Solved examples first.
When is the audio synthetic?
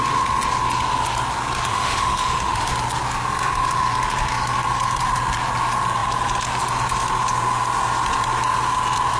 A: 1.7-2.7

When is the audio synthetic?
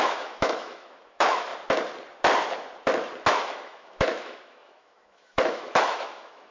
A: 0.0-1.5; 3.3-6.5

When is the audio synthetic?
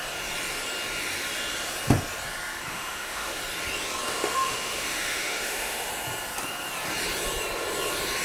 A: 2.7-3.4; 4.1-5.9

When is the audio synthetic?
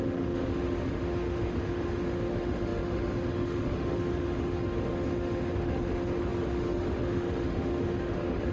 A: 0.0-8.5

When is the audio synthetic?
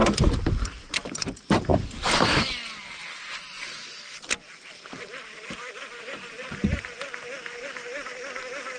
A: none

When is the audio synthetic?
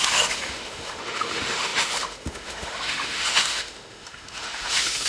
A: 0.0-5.1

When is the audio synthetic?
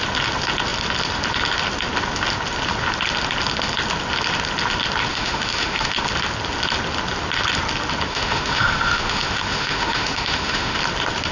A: 5.1-5.9; 8.1-10.8